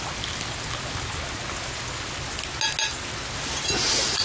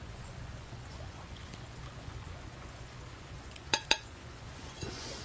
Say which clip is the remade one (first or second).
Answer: second